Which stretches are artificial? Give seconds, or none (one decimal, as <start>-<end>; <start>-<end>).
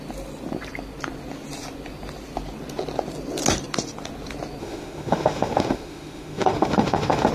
4.6-7.3